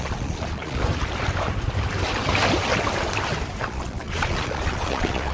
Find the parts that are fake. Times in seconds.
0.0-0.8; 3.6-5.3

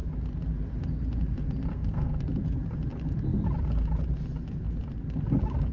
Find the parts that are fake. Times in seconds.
1.7-2.2

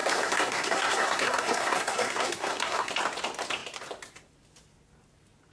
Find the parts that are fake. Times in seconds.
0.0-2.9

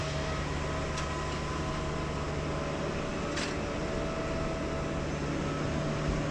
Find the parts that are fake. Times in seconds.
none

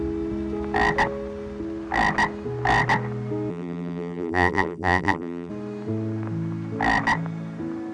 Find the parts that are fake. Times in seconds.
3.5-5.5